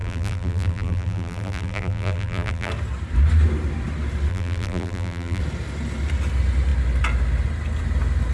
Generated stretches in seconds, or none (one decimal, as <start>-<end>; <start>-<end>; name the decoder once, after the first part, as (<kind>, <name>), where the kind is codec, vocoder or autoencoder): 0.0-2.7 (vocoder, BigVGAN v2); 4.3-5.4